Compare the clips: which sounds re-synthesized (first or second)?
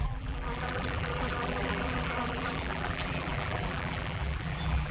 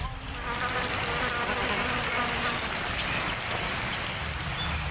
first